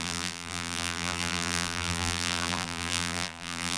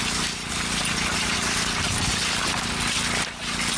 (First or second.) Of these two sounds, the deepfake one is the first